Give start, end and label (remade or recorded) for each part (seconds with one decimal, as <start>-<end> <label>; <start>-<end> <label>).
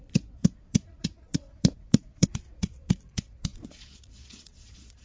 0.0-5.0 remade